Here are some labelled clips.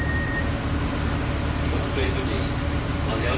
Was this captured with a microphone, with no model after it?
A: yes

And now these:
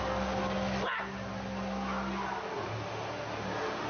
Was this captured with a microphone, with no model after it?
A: yes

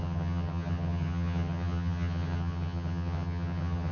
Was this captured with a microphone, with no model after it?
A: no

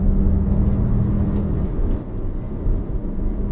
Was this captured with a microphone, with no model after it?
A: yes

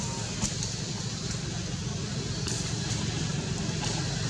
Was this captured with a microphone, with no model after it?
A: yes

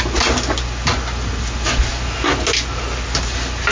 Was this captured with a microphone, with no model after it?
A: yes